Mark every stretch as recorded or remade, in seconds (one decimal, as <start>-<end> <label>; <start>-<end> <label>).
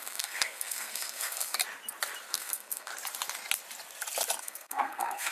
0.0-1.6 remade; 1.6-2.3 recorded; 2.3-2.9 remade; 2.9-4.4 recorded; 4.4-5.3 remade